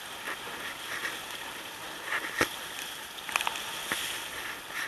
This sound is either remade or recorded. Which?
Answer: recorded